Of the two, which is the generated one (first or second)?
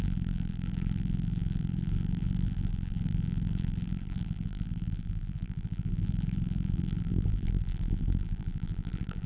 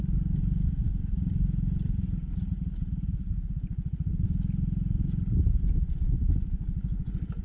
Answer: first